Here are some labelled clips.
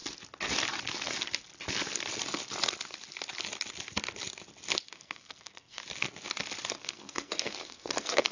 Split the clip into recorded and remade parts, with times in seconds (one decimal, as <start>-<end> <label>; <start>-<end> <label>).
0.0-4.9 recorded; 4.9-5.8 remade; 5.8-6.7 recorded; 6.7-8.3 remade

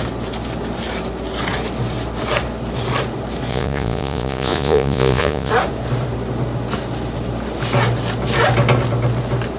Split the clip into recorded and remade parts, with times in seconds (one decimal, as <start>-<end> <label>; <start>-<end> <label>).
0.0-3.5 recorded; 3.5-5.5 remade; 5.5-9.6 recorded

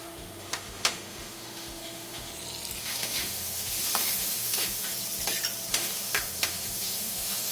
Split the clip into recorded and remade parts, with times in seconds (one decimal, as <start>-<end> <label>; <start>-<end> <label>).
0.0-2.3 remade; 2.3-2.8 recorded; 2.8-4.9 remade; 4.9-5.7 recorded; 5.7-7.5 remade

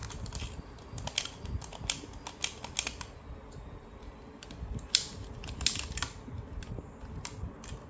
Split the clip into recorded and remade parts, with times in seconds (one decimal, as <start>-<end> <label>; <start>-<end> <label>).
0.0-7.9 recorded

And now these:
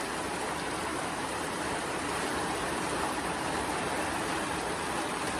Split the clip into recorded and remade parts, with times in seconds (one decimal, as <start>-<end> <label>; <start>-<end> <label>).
0.0-0.9 recorded; 0.9-4.1 remade; 4.1-5.4 recorded

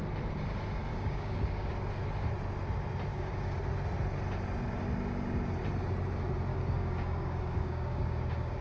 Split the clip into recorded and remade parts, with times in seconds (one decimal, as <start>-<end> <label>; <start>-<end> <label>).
0.0-0.9 recorded; 0.9-1.7 remade; 1.7-3.1 recorded; 3.1-3.6 remade; 3.6-6.5 recorded; 6.5-8.6 remade

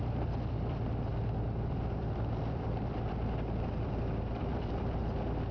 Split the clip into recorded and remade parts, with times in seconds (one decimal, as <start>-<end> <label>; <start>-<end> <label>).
0.0-5.0 remade; 5.0-5.5 recorded